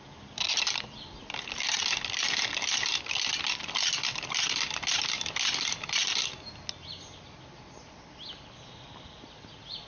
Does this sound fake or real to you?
real